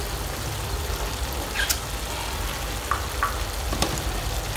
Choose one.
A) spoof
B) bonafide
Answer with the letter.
B